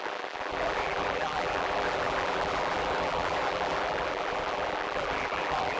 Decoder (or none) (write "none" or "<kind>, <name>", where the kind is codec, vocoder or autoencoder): vocoder, BigVGAN v2